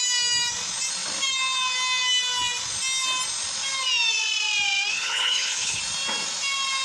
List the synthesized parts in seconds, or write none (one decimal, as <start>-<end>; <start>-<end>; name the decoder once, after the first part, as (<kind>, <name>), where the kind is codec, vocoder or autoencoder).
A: 4.9-5.8 (codec, HILCodec)

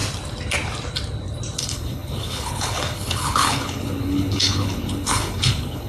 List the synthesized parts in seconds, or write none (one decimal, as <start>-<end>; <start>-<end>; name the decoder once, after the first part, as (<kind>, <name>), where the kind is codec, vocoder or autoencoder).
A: 1.6-5.9 (codec, HILCodec)

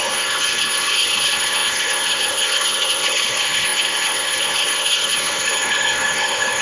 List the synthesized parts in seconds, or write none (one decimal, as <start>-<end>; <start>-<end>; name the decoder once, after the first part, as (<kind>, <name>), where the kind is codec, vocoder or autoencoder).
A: 0.0-6.6 (codec, HILCodec)

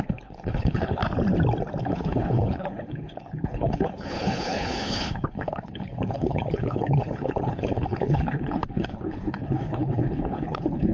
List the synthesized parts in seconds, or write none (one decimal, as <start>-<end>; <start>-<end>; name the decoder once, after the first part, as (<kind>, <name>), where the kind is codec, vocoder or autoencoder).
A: 0.0-1.0 (codec, HILCodec); 1.8-10.9

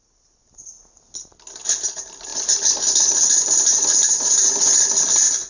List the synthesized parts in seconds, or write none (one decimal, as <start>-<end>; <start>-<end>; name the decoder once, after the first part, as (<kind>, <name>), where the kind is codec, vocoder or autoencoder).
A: none

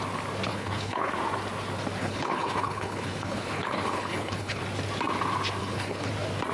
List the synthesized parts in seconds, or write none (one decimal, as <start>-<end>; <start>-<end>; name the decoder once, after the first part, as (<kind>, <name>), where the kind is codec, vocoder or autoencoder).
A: 0.5-1.1 (codec, HILCodec); 2.0-4.6; 5.6-6.1

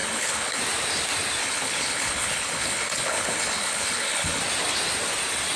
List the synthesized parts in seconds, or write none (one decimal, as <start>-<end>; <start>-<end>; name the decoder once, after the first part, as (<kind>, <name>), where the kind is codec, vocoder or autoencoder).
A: 0.0-0.6 (codec, HILCodec); 1.4-4.4